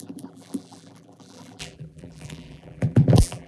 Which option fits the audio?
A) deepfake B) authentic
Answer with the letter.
A